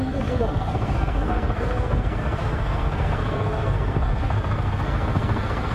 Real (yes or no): no